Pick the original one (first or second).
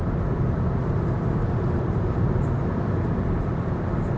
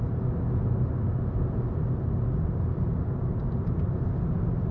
second